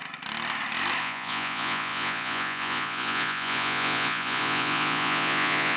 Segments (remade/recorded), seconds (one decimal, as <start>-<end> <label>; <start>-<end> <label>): 0.0-1.0 recorded; 1.0-5.8 remade